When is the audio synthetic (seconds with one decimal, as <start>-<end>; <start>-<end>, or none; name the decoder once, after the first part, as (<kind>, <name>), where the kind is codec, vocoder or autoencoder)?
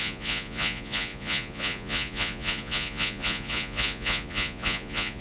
0.0-5.2 (vocoder, Vocos)